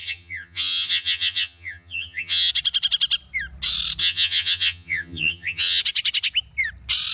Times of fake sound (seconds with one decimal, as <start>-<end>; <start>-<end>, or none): 0.0-2.5; 4.0-5.8